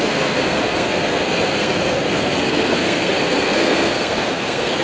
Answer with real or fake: fake